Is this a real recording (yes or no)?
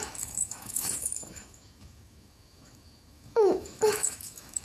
no